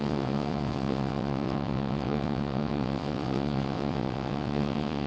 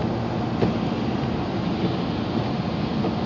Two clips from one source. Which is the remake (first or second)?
first